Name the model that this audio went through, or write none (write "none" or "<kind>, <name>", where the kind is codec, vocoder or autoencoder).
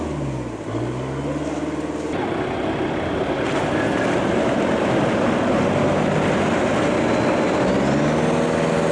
none